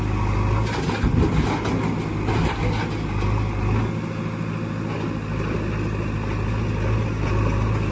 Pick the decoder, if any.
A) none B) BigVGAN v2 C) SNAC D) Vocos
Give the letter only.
A